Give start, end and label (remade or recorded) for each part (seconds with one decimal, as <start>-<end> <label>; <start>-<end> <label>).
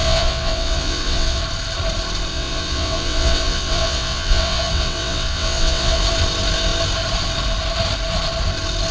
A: 0.0-1.4 remade; 1.4-2.3 recorded; 2.3-6.0 remade; 6.0-8.9 recorded